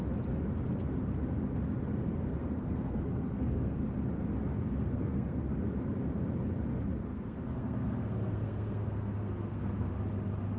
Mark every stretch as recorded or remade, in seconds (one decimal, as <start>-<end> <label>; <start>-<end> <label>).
0.0-2.4 recorded; 2.4-3.8 remade; 3.8-4.5 recorded; 4.5-5.5 remade; 5.5-7.1 recorded; 7.1-9.9 remade; 9.9-10.6 recorded